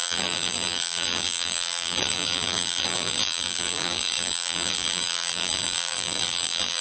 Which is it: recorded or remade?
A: remade